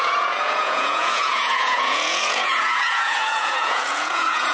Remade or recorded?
remade